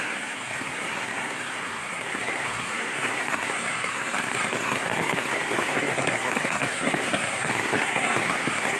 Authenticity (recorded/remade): remade